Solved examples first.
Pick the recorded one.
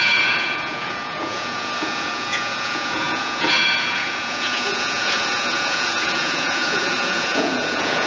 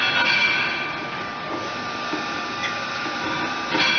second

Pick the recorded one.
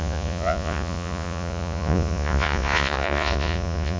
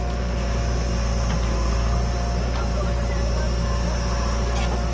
second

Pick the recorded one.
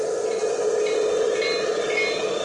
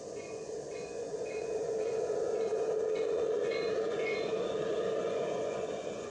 first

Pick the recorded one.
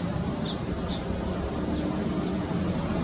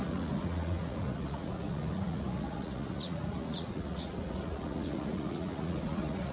first